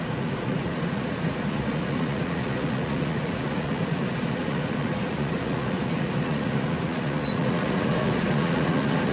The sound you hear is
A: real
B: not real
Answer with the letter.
B